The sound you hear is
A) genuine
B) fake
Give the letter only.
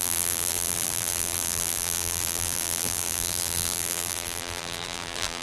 B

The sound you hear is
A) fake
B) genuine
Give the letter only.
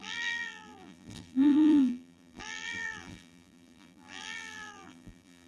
A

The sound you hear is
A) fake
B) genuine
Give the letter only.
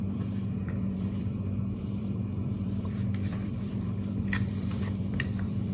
A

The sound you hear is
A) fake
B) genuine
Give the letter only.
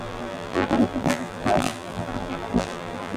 A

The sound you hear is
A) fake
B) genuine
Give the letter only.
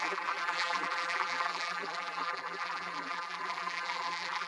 A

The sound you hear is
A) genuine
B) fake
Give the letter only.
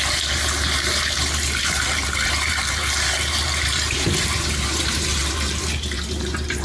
B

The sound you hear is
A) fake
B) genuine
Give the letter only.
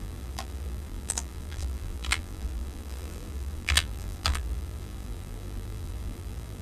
A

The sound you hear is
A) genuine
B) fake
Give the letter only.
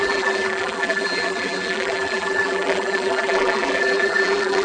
B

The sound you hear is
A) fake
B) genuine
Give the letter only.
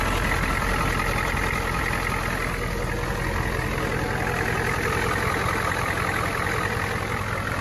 B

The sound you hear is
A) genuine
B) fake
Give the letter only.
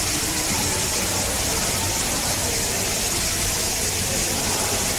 B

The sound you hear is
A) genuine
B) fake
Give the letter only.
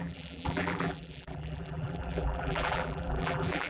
B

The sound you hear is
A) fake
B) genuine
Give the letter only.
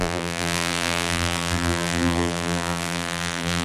A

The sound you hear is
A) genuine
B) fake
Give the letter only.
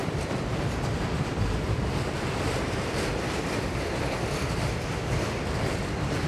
B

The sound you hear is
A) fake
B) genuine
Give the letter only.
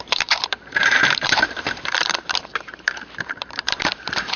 A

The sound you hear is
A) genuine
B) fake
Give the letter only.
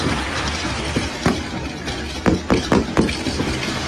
A